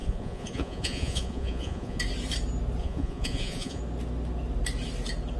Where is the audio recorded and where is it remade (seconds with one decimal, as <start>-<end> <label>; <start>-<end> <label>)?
0.0-2.0 remade; 2.0-2.8 recorded; 2.8-3.8 remade; 3.8-5.4 recorded